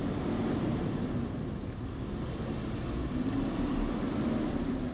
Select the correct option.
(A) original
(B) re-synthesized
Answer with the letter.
A